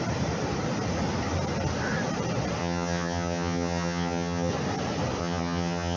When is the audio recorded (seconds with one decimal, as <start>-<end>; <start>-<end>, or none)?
0.0-2.6; 4.5-5.2